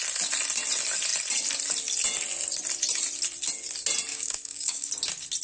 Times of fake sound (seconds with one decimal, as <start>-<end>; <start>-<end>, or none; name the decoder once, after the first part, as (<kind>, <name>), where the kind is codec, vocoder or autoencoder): 4.1-4.9 (codec, DAC)